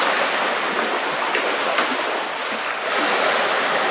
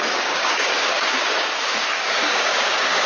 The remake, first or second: second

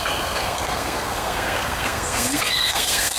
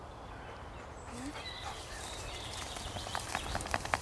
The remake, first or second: first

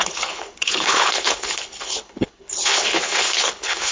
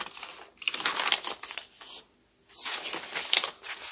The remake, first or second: first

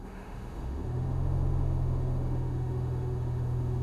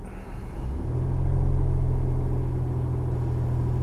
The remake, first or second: first